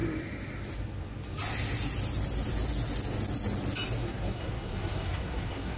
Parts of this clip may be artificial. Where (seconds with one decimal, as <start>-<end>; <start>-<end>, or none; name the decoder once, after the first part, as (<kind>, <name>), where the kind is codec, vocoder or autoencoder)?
4.0-5.8 (codec, SNAC)